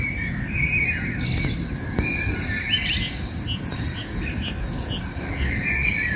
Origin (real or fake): real